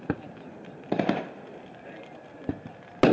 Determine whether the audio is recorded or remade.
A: recorded